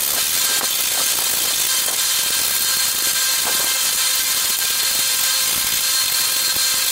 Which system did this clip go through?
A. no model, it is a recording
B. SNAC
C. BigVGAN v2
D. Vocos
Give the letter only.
A